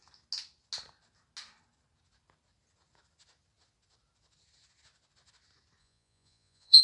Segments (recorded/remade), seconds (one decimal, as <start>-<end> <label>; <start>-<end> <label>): 0.0-5.8 recorded; 5.8-6.8 remade